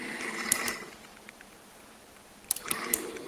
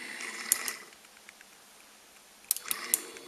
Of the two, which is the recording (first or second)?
second